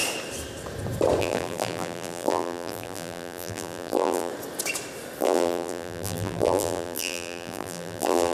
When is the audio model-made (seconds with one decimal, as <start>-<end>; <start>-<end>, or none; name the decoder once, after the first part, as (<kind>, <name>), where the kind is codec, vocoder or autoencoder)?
1.2-4.3 (vocoder, BigVGAN v2); 5.2-8.3